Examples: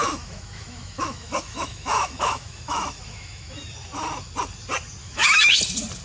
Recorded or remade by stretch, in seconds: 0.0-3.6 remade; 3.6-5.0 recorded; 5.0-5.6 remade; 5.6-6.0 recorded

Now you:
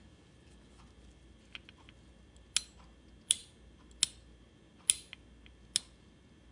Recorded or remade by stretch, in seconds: 0.0-6.5 recorded

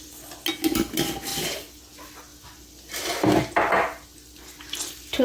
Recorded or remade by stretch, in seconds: 0.0-5.2 recorded